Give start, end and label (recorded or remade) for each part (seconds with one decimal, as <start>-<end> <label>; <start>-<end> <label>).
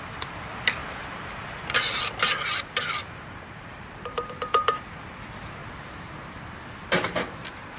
0.0-0.8 recorded; 0.8-1.3 remade; 1.3-3.0 recorded; 3.0-5.0 remade; 5.0-5.6 recorded; 5.6-7.8 remade